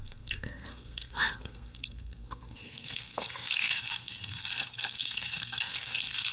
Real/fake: fake